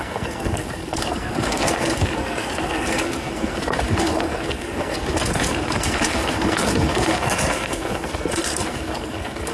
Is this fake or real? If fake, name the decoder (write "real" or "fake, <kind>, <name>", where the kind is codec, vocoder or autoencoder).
fake, codec, SNAC